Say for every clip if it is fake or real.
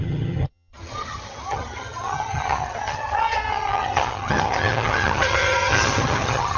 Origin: fake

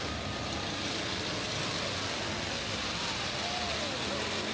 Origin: real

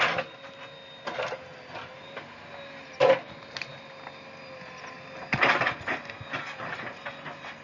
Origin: real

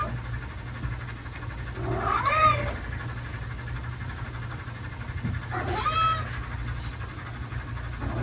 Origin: real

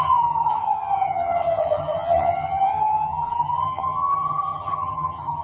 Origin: fake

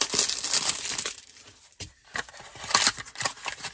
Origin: real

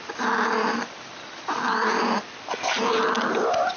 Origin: real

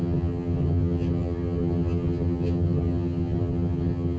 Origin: fake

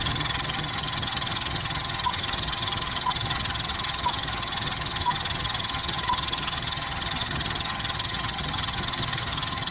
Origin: fake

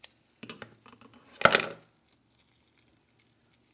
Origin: real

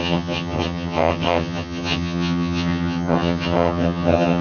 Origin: fake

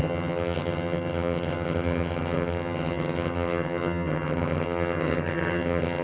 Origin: fake